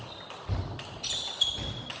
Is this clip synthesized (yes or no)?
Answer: no